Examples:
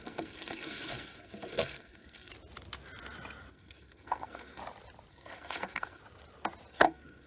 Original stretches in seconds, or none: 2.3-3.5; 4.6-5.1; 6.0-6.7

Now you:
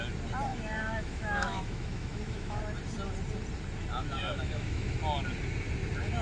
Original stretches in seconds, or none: 0.0-0.5; 2.6-4.0; 5.0-6.2